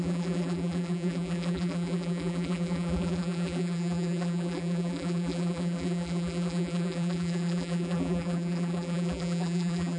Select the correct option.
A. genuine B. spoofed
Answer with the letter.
B